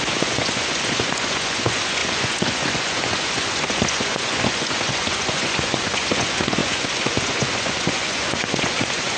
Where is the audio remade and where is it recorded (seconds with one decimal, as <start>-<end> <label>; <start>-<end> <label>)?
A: 0.0-9.2 remade